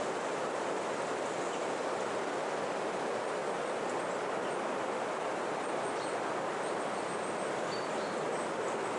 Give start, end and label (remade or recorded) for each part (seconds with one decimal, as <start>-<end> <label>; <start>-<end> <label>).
0.0-9.0 recorded